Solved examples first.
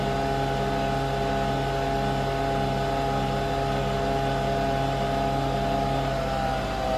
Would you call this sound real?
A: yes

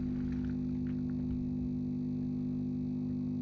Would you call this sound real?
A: yes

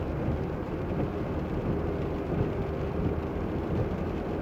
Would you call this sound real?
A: yes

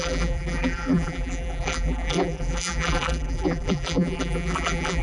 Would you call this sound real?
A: no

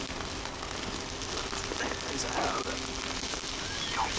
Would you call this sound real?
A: yes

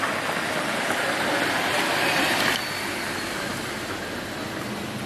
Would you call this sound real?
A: yes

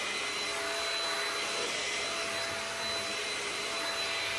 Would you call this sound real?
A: yes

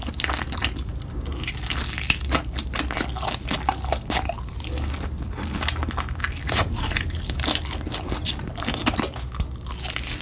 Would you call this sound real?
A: yes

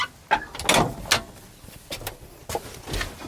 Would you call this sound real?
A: yes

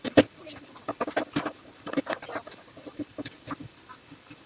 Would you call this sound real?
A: no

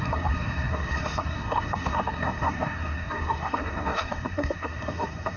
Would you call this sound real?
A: no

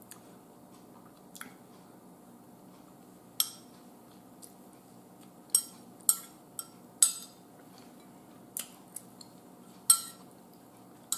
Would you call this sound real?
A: yes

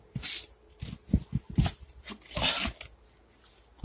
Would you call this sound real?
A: yes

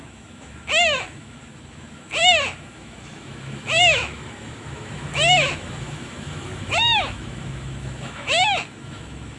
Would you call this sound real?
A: no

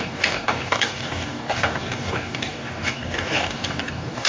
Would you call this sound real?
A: no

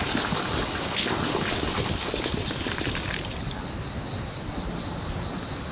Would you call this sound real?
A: yes